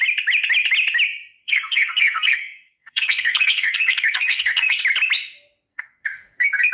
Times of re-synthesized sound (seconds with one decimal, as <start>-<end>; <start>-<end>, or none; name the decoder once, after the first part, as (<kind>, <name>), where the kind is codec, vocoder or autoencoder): 1.4-4.8 (codec, SNAC); 5.7-6.7